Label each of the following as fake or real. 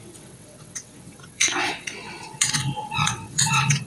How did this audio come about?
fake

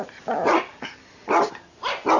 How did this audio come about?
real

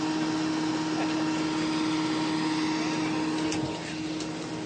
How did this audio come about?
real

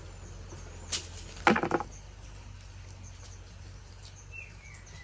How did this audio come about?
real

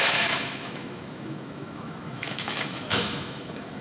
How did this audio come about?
fake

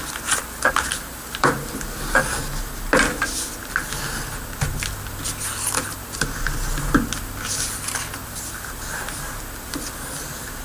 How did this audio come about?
real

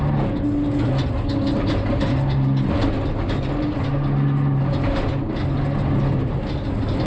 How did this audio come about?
real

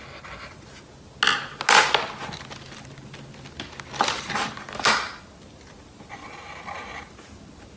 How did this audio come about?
real